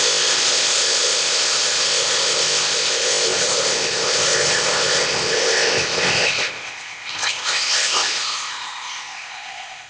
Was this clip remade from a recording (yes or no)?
yes